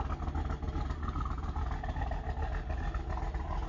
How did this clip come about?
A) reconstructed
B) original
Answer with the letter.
B